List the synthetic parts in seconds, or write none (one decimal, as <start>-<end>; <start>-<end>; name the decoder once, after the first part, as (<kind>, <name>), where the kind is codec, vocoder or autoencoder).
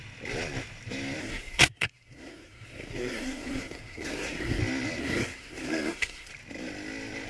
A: 1.2-4.6 (codec, SNAC); 5.0-6.3